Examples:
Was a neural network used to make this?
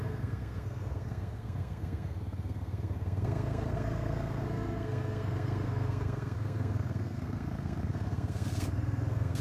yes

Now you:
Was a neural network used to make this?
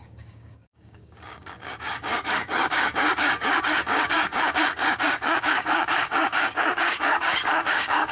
yes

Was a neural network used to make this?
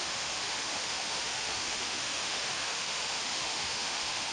yes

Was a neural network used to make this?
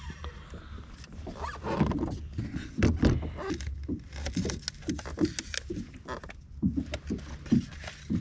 no